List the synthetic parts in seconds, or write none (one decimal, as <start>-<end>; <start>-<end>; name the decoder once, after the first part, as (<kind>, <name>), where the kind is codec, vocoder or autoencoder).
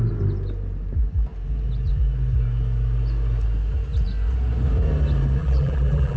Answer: 5.4-6.2 (vocoder, BigVGAN v2)